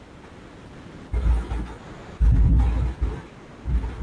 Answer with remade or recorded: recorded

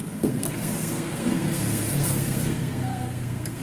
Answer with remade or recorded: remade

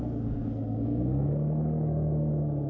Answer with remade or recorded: remade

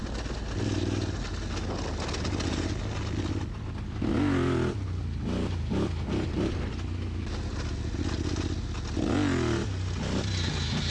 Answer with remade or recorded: recorded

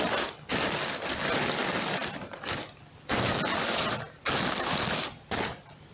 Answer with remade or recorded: recorded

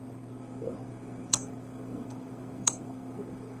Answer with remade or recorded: remade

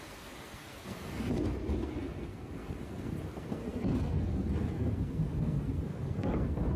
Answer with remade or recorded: remade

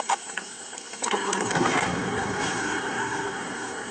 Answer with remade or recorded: remade